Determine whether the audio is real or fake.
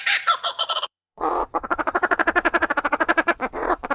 fake